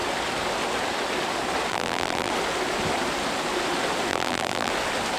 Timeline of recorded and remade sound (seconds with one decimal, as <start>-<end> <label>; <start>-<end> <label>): 0.0-1.7 recorded; 1.7-2.3 remade; 2.3-4.1 recorded; 4.1-4.7 remade; 4.7-5.2 recorded